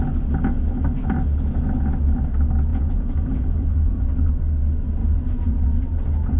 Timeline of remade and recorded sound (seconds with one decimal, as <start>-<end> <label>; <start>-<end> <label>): 0.0-2.7 recorded; 2.7-4.3 remade; 4.3-5.0 recorded; 5.0-6.4 remade